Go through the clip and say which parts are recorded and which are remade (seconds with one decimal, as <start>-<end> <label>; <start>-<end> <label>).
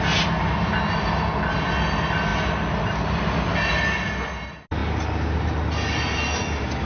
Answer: 0.0-6.9 recorded